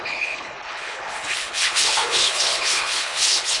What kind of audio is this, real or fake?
fake